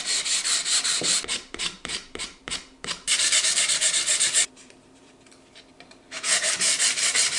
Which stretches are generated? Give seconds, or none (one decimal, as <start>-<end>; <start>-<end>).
1.3-5.3; 6.3-7.4